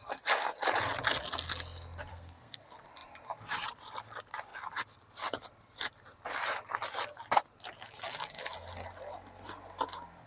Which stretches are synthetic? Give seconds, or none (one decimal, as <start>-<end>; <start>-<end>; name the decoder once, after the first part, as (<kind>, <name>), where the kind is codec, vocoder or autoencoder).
2.1-2.6 (codec, SNAC)